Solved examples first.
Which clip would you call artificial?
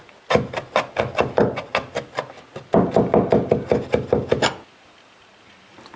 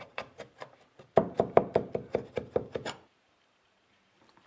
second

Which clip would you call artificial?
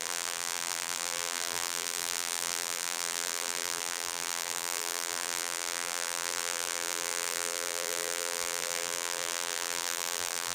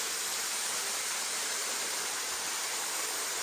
first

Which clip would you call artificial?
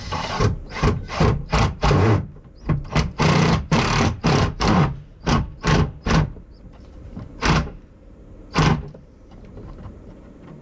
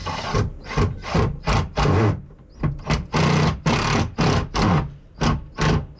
first